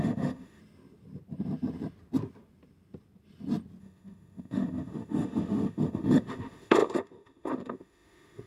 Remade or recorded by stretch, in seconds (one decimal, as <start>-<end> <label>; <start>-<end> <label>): 0.0-0.6 remade; 0.6-3.8 recorded; 3.8-8.5 remade